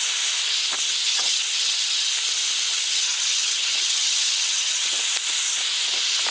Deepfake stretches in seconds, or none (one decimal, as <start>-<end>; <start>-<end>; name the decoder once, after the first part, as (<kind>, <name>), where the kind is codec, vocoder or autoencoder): 1.0-2.1 (vocoder, HiFi-GAN); 2.7-5.0

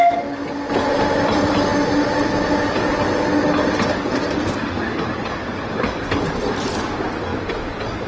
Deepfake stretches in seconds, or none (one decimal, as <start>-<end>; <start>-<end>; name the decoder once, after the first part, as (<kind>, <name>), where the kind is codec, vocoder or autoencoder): none

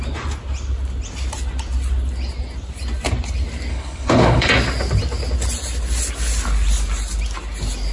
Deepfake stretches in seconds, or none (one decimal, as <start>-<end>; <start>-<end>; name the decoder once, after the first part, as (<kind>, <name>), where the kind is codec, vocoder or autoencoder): 3.7-4.5 (codec, HILCodec)

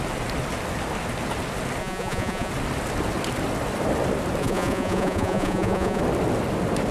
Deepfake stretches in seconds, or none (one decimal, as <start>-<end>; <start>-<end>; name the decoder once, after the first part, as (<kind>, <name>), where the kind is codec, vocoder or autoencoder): 1.8-2.5 (vocoder, Vocos); 4.4-6.0

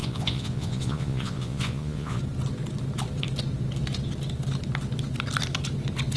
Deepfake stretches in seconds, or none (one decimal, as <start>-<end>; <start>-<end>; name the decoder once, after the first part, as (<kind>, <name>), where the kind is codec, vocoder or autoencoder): 0.0-2.2 (vocoder, Vocos)

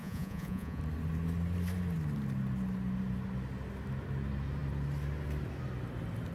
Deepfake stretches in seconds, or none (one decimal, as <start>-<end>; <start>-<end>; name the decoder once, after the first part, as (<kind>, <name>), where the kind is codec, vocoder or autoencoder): 0.0-0.8 (vocoder, Vocos)

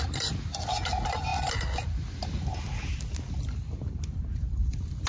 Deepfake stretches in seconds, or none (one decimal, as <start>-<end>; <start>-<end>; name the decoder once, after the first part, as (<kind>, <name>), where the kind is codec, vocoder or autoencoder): none